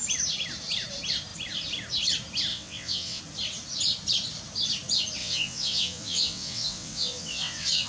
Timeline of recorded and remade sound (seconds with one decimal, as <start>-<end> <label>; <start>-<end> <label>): 0.0-2.5 recorded; 2.5-3.2 remade; 3.2-5.2 recorded; 5.2-7.9 remade